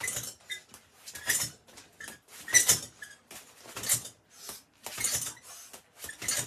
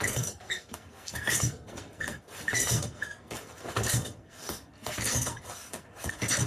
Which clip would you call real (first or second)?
first